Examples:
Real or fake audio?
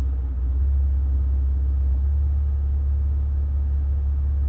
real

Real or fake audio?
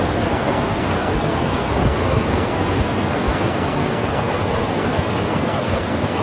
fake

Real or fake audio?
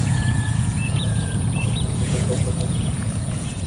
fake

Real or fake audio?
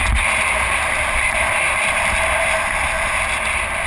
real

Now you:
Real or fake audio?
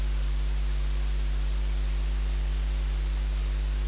real